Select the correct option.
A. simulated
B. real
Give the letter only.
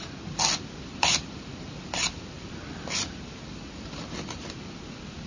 A